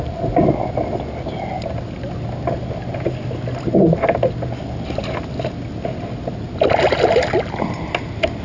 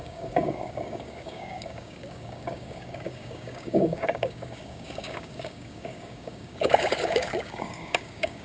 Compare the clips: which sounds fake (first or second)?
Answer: second